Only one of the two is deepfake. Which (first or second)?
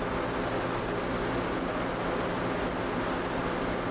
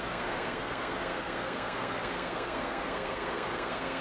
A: second